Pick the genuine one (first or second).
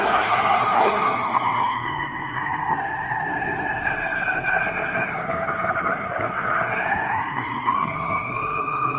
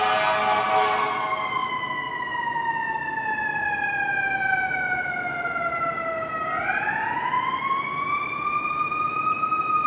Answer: second